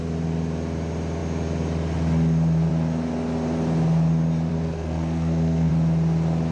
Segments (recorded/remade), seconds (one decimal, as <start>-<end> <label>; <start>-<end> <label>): 0.0-4.5 recorded; 4.5-5.7 remade; 5.7-6.5 recorded